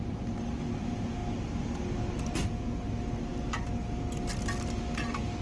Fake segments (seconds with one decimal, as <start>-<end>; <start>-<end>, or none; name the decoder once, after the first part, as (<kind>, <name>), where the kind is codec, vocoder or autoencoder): none